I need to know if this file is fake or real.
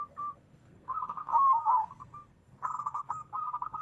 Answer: fake